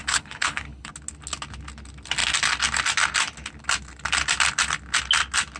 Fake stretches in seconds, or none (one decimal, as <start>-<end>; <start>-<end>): 0.0-0.9